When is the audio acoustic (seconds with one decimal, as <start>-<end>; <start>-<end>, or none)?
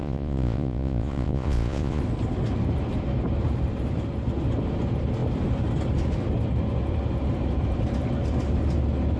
2.0-9.2